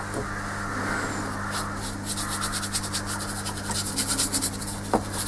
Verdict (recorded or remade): recorded